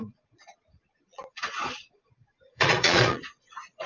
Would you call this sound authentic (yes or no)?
no